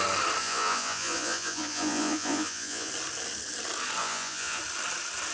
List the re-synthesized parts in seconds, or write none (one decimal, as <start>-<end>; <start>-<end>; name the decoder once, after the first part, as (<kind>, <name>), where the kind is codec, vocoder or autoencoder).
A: 0.4-2.9 (vocoder, Vocos); 4.0-4.6